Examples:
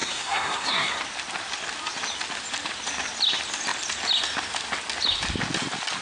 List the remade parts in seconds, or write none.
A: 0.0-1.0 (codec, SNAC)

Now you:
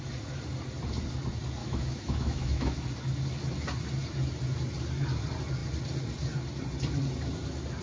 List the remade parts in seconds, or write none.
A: 1.6-2.8 (autoencoder, DAC-VAE)

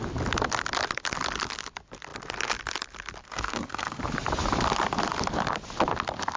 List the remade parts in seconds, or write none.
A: 3.2-4.0 (codec, SNAC)

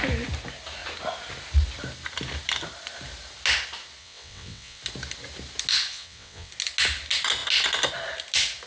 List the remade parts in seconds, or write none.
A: 4.0-4.8 (vocoder, WaveNeXt); 5.9-6.5